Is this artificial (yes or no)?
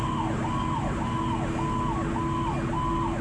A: no